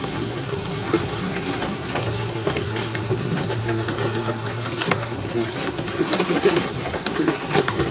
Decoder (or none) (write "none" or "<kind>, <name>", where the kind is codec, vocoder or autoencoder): codec, SNAC